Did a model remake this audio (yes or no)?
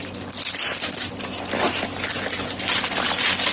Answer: no